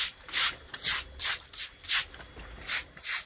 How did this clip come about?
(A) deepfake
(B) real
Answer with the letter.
B